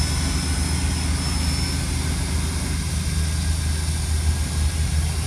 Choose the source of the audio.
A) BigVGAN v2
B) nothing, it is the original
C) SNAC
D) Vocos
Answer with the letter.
B